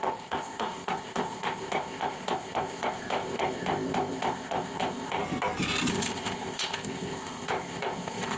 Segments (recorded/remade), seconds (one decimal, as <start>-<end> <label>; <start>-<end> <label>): 0.0-5.2 remade; 5.2-5.9 recorded; 5.9-8.4 remade